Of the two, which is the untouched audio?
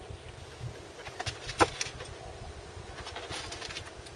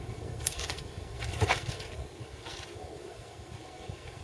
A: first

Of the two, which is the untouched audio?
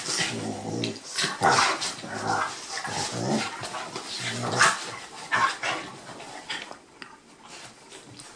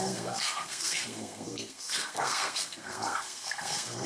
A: first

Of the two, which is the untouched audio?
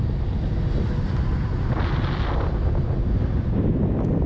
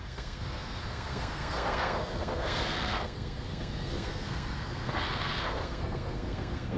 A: first